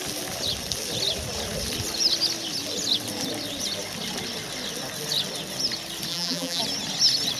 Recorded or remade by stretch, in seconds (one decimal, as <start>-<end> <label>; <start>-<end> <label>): 0.0-6.1 recorded; 6.1-6.6 remade; 6.6-7.4 recorded